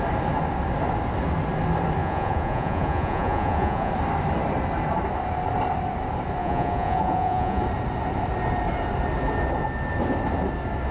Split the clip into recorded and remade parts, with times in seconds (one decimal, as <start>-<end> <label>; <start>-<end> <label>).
0.0-2.0 recorded; 2.0-3.9 remade; 3.9-6.4 recorded; 6.4-7.6 remade; 7.6-10.9 recorded